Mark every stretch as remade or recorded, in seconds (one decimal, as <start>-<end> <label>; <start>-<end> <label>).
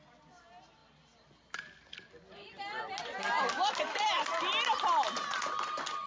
0.0-6.1 recorded